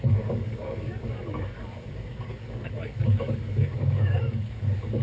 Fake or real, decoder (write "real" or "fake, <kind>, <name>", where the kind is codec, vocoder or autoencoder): fake, codec, DAC